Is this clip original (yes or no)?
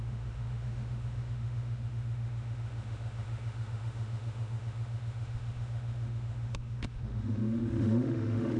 no